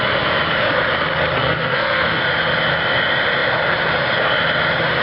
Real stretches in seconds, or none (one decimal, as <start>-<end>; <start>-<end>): 0.0-1.4; 2.2-5.0